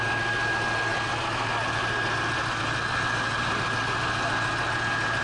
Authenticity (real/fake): real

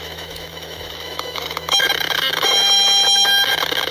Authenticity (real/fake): fake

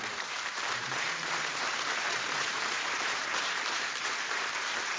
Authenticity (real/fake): fake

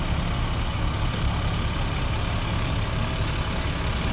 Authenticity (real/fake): real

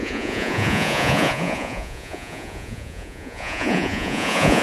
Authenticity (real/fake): fake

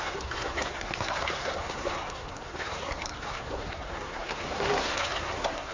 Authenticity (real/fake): fake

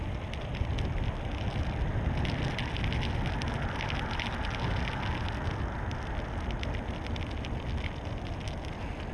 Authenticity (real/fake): real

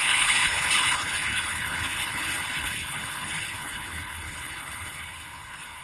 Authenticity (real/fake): fake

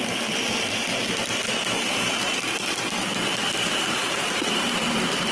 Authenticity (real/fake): fake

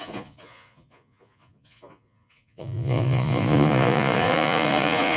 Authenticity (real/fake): fake